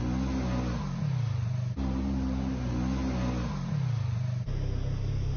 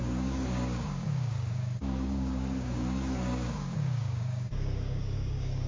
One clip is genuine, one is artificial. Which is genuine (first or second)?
first